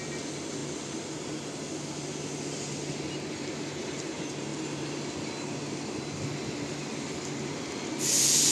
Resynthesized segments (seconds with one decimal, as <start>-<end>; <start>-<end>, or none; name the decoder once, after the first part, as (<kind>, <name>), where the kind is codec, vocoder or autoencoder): none